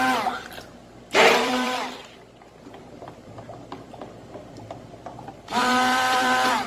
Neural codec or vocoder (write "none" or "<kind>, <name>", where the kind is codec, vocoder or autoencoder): vocoder, BigVGAN v2